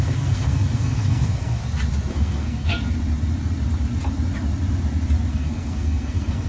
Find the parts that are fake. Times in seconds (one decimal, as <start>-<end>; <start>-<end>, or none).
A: 0.0-1.6; 2.1-2.7; 5.3-6.5